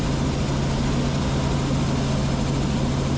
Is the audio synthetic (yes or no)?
no